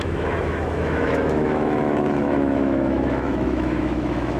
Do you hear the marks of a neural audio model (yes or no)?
yes